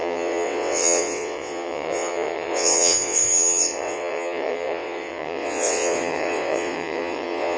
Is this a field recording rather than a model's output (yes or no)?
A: no